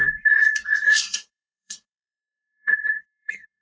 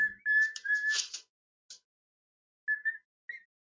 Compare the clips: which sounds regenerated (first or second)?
first